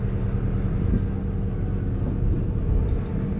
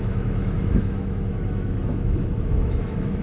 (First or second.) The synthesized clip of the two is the second